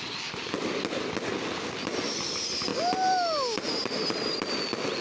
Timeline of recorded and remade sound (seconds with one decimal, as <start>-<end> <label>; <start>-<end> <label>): 0.0-5.0 recorded